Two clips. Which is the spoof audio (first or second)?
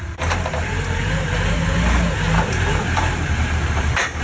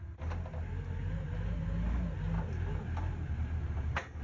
first